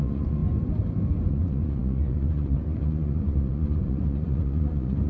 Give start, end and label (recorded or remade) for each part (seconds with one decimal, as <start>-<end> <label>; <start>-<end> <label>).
0.0-0.4 remade; 0.4-1.3 recorded; 1.3-5.1 remade